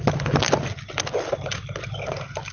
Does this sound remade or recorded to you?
recorded